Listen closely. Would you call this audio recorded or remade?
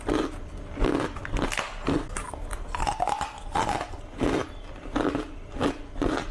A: recorded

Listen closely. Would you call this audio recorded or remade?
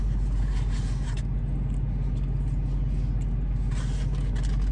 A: recorded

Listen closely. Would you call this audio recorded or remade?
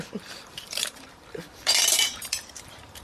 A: remade